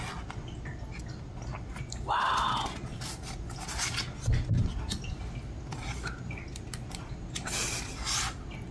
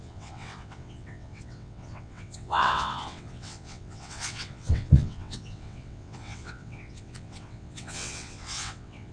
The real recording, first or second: first